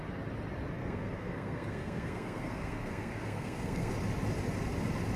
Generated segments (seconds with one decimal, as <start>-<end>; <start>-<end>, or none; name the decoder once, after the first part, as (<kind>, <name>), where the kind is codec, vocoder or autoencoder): 0.8-3.9 (codec, SNAC)